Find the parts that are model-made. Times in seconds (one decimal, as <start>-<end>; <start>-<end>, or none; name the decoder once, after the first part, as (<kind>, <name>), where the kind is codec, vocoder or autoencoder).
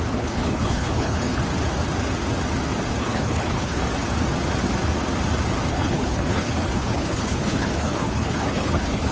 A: 0.0-1.4 (codec, HILCodec); 3.0-3.8; 5.7-9.1